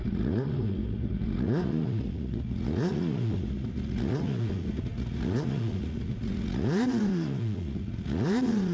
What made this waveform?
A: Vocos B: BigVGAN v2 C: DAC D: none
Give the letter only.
A